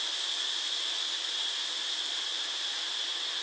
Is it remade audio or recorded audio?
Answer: recorded